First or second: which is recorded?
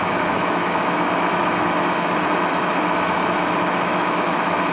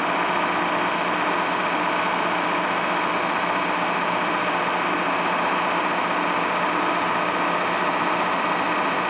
second